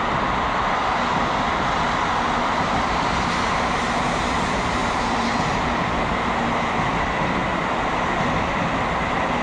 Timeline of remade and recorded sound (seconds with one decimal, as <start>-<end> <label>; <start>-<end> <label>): 0.0-9.4 recorded